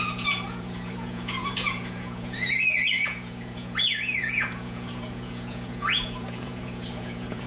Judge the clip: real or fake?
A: fake